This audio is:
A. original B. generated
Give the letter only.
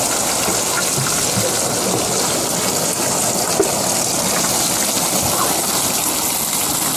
A